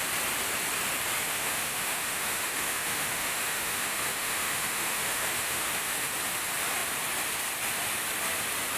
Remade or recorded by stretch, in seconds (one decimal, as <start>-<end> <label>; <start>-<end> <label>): 0.0-1.2 recorded; 1.2-6.1 remade; 6.1-8.8 recorded